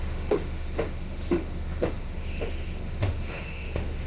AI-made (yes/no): yes